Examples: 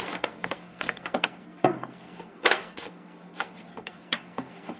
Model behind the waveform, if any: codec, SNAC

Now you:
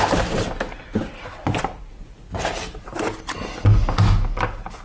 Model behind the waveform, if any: none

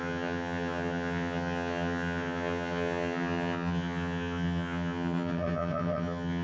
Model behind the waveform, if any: vocoder, HiFi-GAN